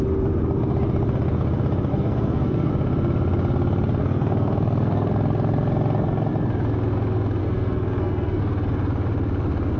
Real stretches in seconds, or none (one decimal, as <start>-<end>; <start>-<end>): 0.0-1.9; 2.7-4.0; 5.1-7.4; 8.4-9.8